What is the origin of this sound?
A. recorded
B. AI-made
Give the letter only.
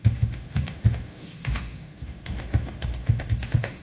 B